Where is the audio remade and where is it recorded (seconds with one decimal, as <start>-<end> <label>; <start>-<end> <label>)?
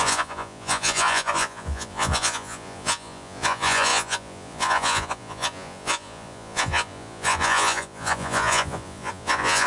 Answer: 0.0-9.7 remade